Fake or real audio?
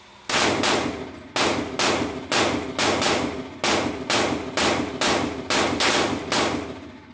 real